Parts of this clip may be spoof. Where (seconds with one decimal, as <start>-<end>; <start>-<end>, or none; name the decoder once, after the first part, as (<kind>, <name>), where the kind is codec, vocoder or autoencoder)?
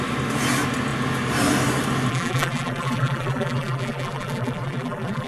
2.1-5.3 (vocoder, BigVGAN v2)